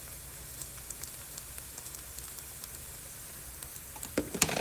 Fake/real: fake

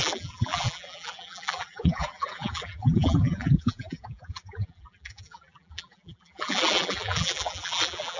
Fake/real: fake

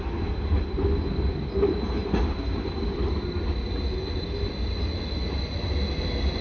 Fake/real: real